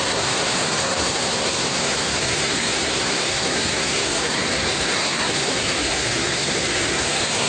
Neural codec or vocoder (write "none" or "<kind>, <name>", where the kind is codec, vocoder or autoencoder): codec, SNAC